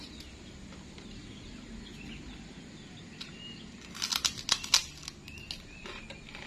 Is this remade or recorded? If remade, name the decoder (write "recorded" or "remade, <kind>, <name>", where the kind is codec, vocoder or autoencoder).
recorded